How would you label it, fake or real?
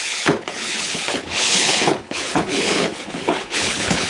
fake